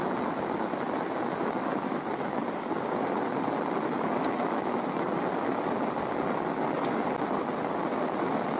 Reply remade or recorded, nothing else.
recorded